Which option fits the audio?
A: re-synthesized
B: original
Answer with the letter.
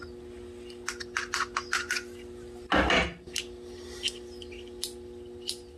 B